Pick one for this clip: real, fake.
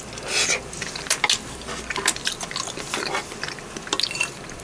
real